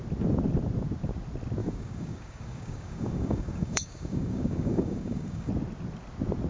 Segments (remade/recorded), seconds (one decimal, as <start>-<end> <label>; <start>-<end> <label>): 0.0-1.6 recorded; 1.6-5.5 remade; 5.5-6.5 recorded